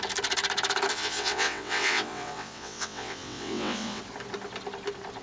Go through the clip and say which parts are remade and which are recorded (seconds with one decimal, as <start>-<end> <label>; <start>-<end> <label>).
0.0-0.9 recorded; 0.9-4.0 remade; 4.0-5.2 recorded

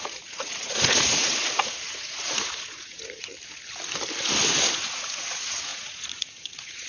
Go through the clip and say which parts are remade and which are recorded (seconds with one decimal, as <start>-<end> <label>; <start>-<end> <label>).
0.0-3.3 remade; 3.3-4.7 recorded; 4.7-6.9 remade

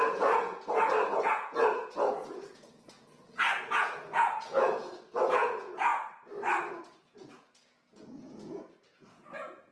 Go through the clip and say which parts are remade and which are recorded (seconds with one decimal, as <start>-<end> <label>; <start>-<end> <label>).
0.0-0.5 remade; 0.5-1.2 recorded; 1.2-5.9 remade; 5.9-6.7 recorded; 6.7-9.7 remade